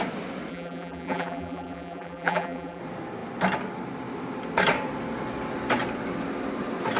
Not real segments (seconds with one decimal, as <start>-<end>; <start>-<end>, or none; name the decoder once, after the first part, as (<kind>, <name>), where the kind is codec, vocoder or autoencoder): 0.5-2.8 (vocoder, BigVGAN v2)